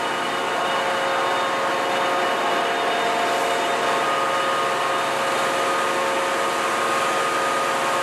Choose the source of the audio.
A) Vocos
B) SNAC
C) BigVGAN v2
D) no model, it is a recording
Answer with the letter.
D